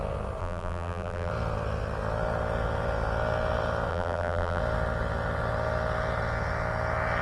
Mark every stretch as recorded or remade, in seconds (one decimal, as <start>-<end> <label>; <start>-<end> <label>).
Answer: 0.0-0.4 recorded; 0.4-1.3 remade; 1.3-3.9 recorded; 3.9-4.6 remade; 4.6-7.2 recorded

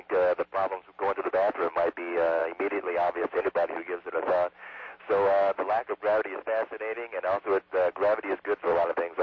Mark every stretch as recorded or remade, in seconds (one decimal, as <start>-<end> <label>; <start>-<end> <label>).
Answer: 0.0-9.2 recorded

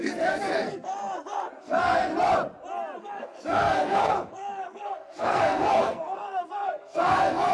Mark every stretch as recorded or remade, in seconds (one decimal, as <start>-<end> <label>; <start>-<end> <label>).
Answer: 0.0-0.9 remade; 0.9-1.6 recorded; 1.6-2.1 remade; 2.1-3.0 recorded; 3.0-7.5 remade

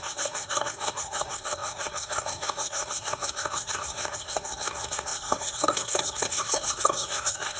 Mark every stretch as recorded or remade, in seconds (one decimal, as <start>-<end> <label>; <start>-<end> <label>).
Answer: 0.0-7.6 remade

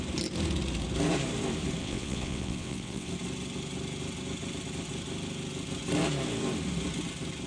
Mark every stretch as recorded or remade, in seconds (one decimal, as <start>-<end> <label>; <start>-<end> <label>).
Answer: 0.0-1.8 recorded; 1.8-3.1 remade; 3.1-7.5 recorded